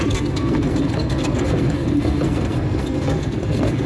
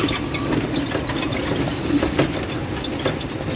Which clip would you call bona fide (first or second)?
second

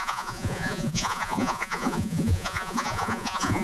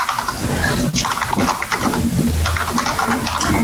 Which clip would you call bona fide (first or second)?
second